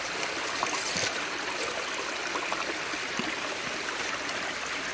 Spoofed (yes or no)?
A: no